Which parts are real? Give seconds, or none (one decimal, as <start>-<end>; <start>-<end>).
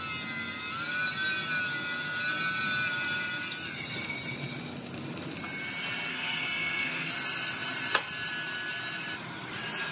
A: 0.0-6.1; 7.1-9.9